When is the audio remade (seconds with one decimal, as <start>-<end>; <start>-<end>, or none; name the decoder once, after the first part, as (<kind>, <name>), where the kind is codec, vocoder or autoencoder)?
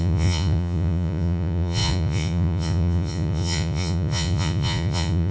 0.0-5.3 (vocoder, Vocos)